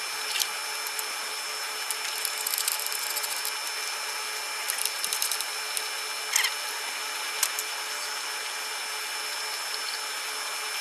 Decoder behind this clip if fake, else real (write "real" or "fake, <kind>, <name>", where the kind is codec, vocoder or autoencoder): real